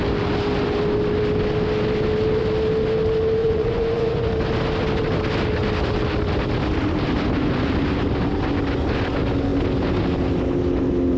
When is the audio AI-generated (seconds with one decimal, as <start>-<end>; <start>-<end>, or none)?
3.4-4.3